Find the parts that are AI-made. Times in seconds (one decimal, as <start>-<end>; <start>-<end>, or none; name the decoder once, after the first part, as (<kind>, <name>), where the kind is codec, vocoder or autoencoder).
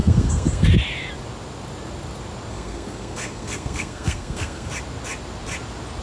0.0-0.7 (codec, SNAC); 2.5-4.7